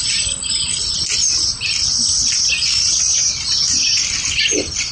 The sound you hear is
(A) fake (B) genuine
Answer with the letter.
B